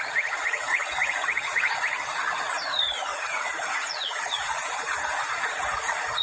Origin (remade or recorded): remade